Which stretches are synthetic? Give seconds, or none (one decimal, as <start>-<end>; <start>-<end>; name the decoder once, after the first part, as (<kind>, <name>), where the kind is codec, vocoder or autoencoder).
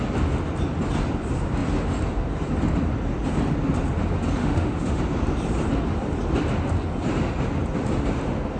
4.4-5.0 (autoencoder, DAC-VAE)